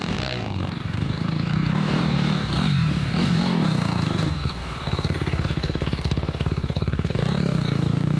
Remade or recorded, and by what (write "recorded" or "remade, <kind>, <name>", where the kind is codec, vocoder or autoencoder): remade, codec, DAC